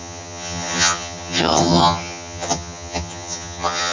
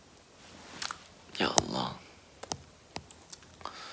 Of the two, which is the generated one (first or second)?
first